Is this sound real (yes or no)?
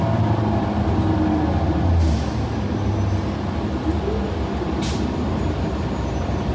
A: yes